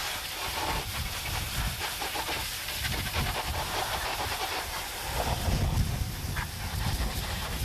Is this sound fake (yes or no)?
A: no